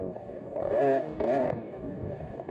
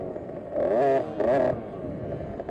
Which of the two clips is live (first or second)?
second